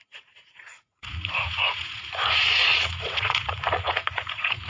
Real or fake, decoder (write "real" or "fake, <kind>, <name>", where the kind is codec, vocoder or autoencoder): fake, vocoder, Vocos